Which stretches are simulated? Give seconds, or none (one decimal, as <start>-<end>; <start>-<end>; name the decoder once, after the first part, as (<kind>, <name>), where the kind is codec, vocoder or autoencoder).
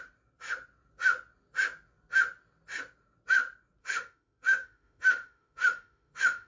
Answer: 3.8-6.5 (autoencoder, DAC-VAE)